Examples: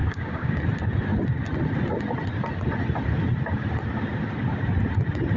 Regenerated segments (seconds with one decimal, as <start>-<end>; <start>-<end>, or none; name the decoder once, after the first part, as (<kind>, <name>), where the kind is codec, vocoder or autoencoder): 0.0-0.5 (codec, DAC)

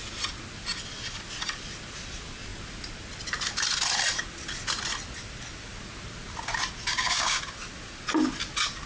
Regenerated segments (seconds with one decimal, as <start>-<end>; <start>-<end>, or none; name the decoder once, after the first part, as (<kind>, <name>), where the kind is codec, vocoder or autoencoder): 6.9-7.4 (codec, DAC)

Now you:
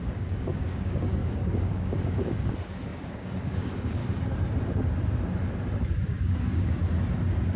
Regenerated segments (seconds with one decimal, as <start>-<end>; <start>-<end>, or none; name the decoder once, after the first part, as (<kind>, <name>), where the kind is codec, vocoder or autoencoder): 0.0-4.0 (codec, DAC); 5.9-6.8

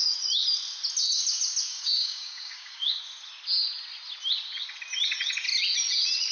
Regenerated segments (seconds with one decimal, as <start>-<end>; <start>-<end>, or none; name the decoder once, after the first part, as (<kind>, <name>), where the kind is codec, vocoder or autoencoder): 1.7-3.0 (codec, DAC)

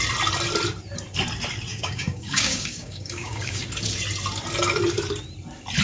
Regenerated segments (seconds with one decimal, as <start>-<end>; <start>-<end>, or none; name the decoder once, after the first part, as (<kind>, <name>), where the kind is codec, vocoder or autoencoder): 1.7-3.6 (codec, DAC)

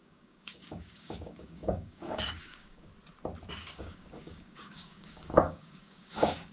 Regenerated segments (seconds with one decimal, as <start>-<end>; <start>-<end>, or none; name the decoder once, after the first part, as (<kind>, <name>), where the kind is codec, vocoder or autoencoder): 0.0-2.9 (codec, DAC); 3.5-6.5

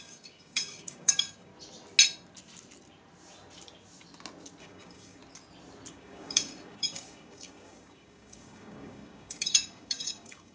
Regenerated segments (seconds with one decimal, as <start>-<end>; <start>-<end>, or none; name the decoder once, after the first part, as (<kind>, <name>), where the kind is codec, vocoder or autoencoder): 0.0-1.5 (codec, DAC); 4.6-5.2; 5.9-10.5

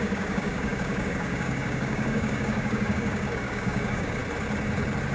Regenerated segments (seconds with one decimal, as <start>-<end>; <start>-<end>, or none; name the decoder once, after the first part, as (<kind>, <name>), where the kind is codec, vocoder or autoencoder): 0.0-4.2 (codec, DAC)